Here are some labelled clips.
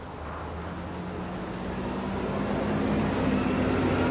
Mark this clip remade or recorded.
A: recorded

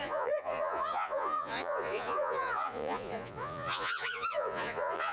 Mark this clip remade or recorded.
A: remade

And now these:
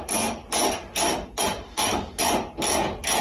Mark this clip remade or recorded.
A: recorded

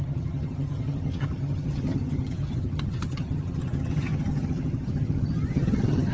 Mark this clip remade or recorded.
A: remade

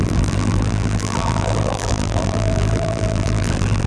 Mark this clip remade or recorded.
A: remade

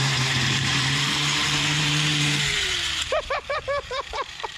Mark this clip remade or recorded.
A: remade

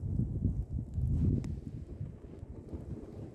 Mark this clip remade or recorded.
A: recorded